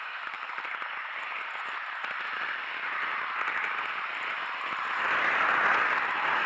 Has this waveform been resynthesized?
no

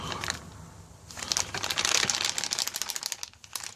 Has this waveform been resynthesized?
no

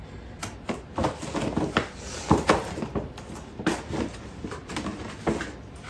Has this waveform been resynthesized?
no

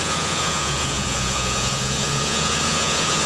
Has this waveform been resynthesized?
yes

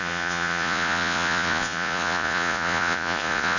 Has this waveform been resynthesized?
yes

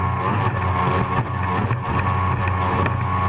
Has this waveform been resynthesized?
no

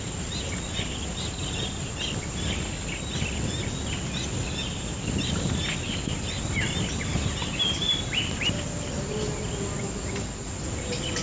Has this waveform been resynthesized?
no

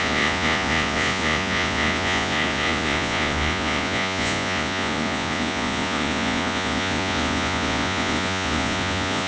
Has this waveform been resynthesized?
yes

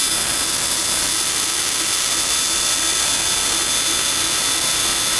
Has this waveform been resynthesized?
no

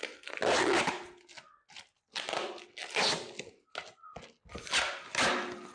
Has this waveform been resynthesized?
no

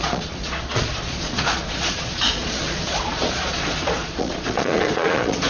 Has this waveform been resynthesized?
yes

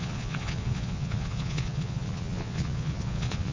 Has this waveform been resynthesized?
yes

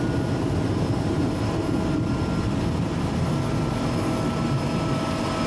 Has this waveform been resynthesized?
no